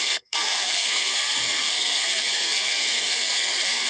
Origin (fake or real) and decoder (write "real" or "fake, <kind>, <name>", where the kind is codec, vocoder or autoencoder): fake, codec, SNAC